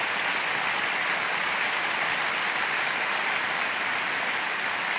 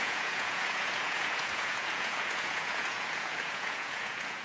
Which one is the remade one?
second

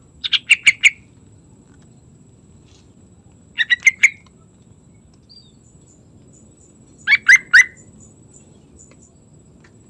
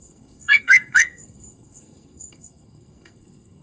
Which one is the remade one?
second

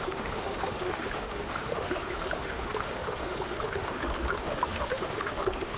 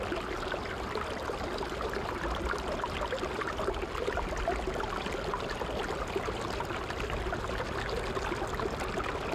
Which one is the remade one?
first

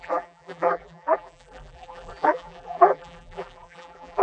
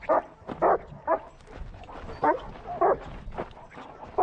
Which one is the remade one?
first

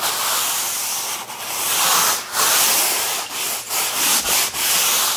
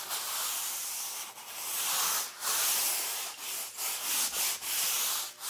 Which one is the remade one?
first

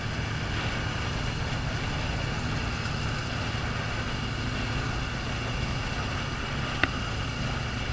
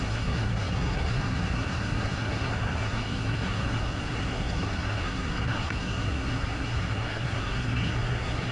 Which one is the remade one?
second